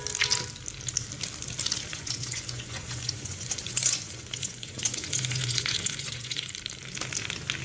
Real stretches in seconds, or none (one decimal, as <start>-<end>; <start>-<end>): 0.0-1.9; 6.5-7.6